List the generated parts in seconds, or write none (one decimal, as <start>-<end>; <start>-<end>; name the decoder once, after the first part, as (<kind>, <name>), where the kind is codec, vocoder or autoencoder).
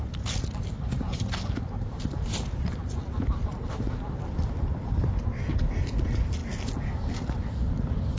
0.9-6.4 (vocoder, BigVGAN v2); 7.1-8.2